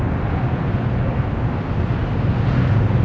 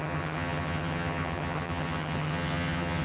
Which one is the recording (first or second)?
first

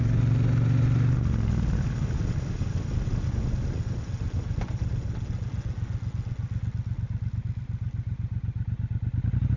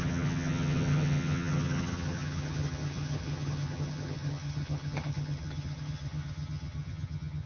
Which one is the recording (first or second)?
first